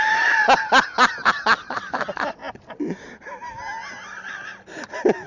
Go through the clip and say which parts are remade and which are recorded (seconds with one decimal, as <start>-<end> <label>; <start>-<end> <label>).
0.0-5.3 recorded